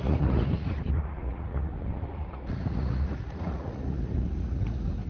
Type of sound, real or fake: fake